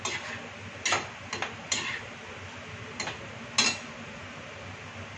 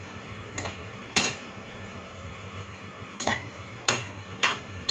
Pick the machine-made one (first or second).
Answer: second